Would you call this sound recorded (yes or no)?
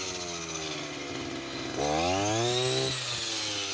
yes